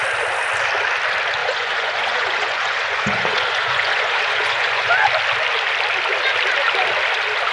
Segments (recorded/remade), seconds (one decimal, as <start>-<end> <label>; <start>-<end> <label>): 0.0-1.4 recorded; 1.4-4.9 remade; 4.9-7.5 recorded